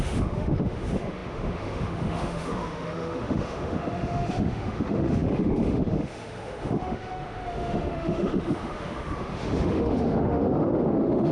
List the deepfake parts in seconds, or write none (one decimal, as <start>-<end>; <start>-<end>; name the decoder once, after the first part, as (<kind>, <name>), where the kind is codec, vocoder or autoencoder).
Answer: 0.0-11.3 (autoencoder, DAC-VAE)